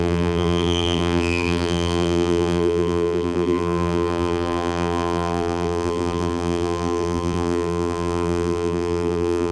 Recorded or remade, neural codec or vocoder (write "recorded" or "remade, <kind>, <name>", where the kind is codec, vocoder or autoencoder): remade, vocoder, BigVGAN v2